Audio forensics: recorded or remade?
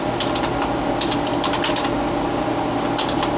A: recorded